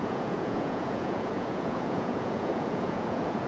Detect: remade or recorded remade